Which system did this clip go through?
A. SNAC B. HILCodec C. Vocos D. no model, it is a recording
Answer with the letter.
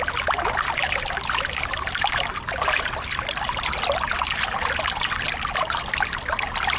D